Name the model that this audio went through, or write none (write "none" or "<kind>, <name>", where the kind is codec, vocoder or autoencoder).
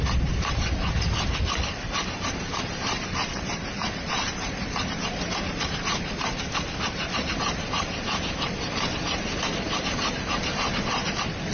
vocoder, BigVGAN v2